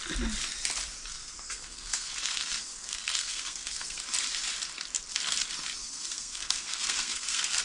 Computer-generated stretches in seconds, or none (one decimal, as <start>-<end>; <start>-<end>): 1.1-4.0; 5.8-7.6